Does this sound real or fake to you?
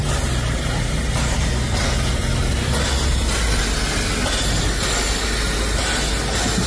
real